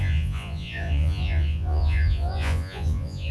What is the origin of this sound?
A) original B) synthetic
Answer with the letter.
B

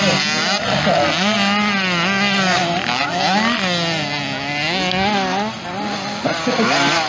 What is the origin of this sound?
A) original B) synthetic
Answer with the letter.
A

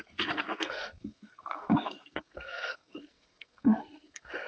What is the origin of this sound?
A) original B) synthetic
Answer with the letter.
B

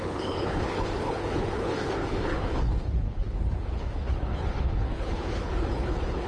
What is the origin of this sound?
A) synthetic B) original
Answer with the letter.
A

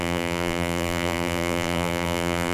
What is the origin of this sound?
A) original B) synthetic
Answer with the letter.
B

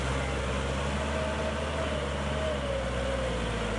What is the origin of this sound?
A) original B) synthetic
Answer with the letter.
A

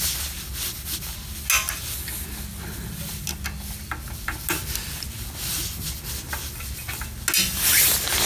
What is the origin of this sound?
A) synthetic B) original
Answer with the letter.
B